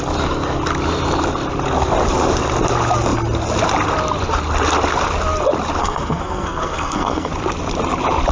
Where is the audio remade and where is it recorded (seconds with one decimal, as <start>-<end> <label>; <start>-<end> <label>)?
0.0-5.8 recorded; 5.8-7.3 remade; 7.3-8.3 recorded